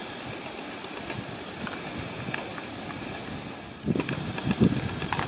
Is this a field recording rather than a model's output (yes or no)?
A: yes